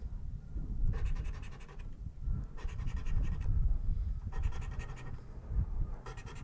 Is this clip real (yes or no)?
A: no